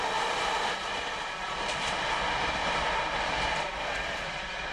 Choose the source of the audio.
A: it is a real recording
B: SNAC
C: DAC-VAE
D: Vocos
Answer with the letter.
A